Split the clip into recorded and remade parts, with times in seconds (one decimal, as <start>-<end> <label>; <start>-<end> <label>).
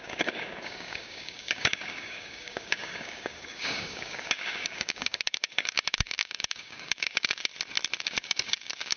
0.0-7.5 remade; 7.5-8.0 recorded; 8.0-9.0 remade